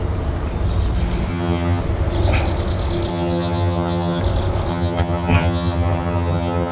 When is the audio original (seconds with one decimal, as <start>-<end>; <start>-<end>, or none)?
0.0-1.3; 1.8-3.1; 4.2-4.7